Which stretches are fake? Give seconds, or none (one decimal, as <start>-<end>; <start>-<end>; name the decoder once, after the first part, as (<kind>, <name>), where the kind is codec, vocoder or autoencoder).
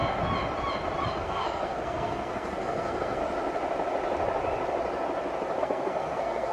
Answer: 1.2-3.2 (codec, SNAC); 5.6-6.5